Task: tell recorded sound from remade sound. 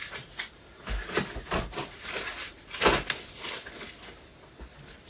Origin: recorded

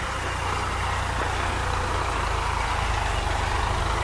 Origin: recorded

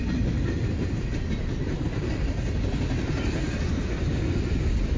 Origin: recorded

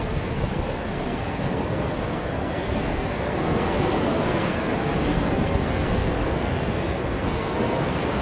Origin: remade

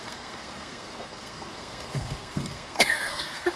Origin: remade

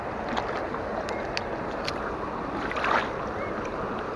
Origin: recorded